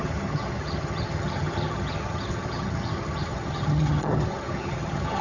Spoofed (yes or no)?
yes